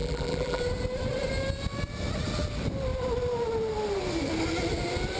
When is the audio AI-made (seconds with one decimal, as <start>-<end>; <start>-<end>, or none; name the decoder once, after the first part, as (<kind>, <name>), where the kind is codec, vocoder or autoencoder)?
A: 0.0-0.6 (vocoder, BigVGAN v2)